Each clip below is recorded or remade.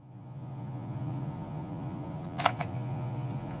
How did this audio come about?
remade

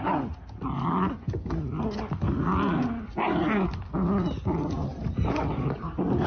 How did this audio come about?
recorded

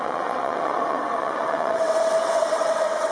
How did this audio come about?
remade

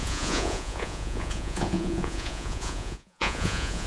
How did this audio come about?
remade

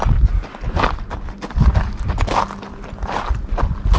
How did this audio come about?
recorded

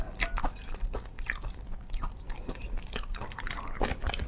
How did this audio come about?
recorded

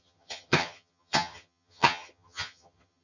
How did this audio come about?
remade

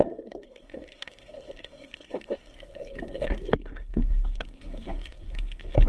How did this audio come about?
remade